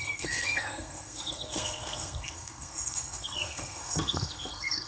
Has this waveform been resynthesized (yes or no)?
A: yes